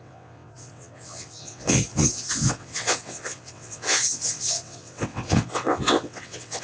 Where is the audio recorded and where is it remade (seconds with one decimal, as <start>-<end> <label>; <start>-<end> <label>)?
0.0-6.6 remade